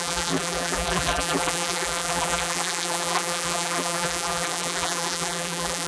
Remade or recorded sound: remade